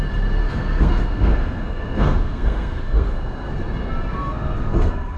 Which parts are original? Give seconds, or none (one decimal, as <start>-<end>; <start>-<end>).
0.0-0.4; 3.5-4.2

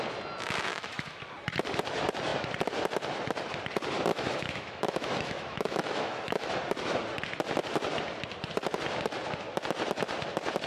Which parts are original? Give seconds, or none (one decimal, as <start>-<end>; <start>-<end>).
0.0-0.7; 1.2-4.1; 6.5-10.7

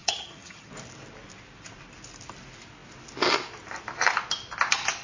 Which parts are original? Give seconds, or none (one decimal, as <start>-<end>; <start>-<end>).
0.7-5.0

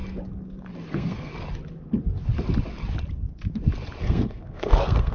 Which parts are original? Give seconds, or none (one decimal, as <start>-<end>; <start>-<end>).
0.0-0.9; 1.3-4.0

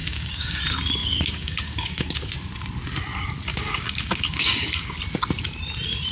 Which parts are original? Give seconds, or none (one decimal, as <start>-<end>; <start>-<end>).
0.6-1.0; 2.3-3.5; 5.0-6.1

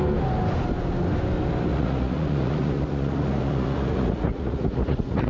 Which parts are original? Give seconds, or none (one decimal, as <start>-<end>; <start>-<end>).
0.0-1.7

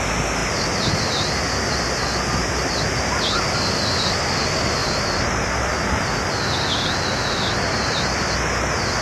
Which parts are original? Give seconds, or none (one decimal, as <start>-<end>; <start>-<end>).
0.0-4.8; 6.1-9.0